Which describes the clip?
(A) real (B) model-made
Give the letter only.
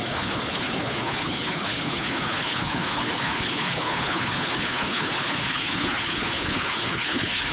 B